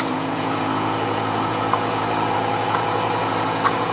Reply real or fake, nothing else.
fake